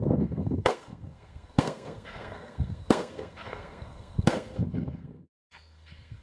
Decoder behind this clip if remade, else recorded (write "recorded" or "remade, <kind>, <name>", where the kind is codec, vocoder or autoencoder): remade, codec, SNAC